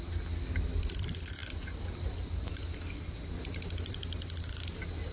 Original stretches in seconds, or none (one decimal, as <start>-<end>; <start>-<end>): 0.0-5.1